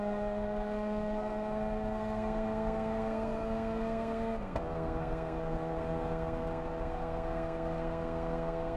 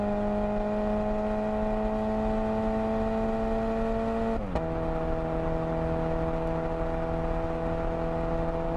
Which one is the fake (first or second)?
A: first